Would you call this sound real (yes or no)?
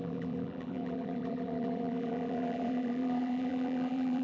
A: no